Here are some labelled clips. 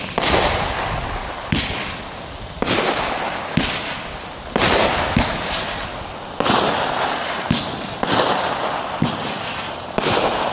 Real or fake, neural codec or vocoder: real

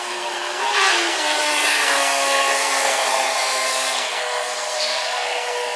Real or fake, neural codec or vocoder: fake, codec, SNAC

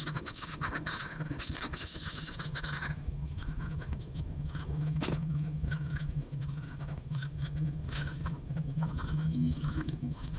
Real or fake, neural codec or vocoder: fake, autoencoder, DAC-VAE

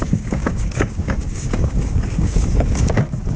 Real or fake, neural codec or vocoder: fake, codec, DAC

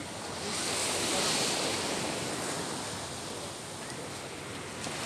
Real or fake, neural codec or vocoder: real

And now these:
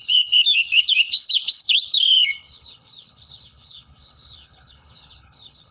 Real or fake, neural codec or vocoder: fake, codec, HILCodec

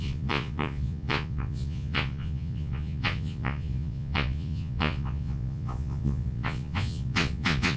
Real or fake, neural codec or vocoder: fake, vocoder, Vocos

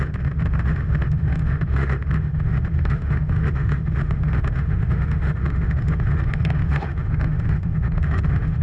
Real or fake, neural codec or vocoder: fake, autoencoder, DAC-VAE